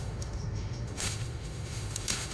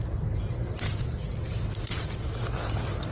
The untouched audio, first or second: second